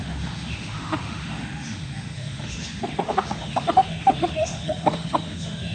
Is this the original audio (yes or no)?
no